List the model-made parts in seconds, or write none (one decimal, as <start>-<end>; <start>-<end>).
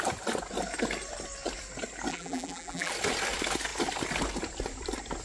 2.1-2.9